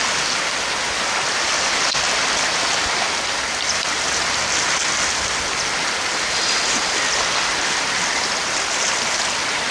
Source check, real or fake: real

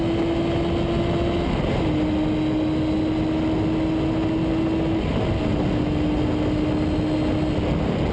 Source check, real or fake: real